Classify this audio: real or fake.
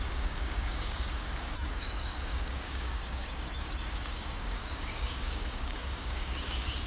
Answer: fake